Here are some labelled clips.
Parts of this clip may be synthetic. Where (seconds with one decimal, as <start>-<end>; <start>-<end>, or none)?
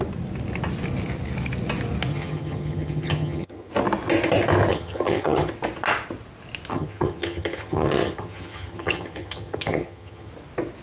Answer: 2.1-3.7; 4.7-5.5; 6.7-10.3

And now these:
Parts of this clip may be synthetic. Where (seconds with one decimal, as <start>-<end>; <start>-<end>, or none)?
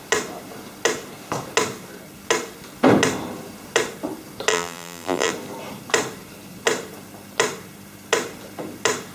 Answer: 4.5-5.3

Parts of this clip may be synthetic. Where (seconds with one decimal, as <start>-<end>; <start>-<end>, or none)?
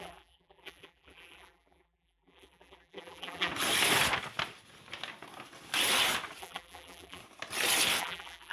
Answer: 0.0-3.5; 6.4-7.2; 8.0-8.5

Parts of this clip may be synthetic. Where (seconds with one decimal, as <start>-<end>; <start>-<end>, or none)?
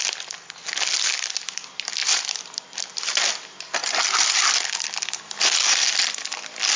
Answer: 2.0-3.3; 3.8-5.2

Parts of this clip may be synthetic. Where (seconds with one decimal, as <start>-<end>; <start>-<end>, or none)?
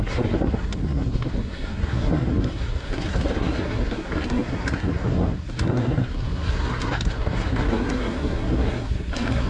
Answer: 0.0-9.5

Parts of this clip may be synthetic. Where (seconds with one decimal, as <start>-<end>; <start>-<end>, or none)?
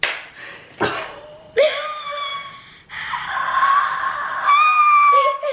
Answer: none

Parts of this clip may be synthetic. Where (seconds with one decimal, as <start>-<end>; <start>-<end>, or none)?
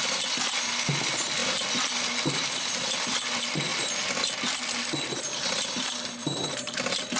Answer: 6.2-7.2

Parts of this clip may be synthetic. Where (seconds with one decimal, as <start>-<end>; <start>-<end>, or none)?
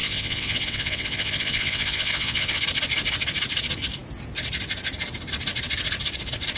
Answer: 0.0-2.6